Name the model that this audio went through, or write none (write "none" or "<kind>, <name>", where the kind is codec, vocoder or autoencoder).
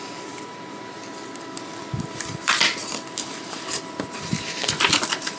vocoder, BigVGAN v2